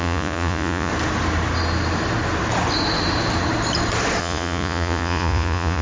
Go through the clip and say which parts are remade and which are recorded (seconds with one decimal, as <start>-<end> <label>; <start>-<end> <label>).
0.0-0.9 remade; 0.9-4.2 recorded; 4.2-5.8 remade